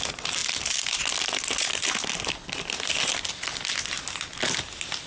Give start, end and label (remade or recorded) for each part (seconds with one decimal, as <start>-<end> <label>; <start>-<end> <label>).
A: 0.0-5.1 recorded